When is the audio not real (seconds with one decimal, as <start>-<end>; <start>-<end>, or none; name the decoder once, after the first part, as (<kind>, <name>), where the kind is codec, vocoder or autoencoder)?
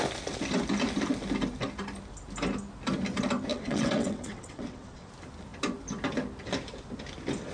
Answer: 3.5-5.1 (vocoder, WaveNeXt)